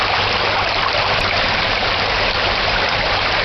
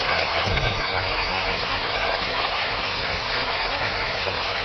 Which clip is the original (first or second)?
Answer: first